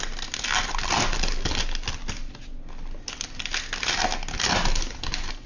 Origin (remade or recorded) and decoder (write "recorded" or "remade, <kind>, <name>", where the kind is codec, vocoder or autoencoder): recorded